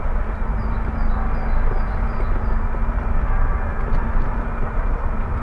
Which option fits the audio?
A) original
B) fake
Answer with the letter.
A